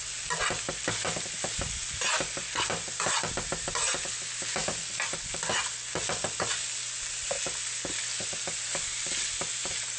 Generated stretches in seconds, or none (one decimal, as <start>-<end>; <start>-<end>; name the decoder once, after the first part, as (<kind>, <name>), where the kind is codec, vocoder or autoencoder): none